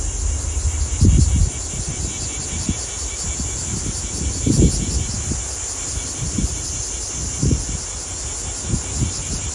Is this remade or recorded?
recorded